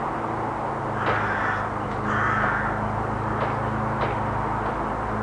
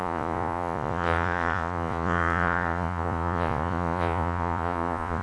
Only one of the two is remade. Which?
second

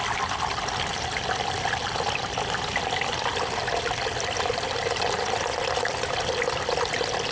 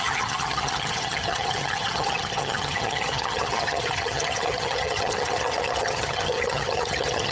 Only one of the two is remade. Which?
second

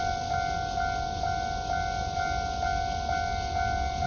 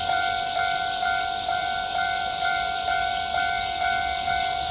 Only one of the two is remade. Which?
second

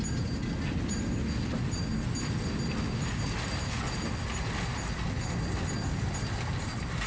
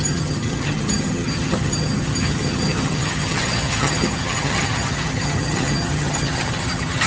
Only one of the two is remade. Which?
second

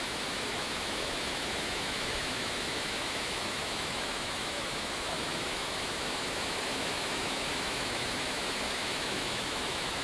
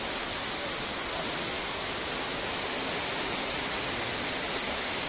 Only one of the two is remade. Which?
first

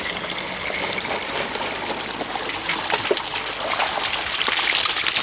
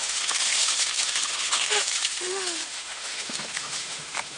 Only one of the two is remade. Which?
second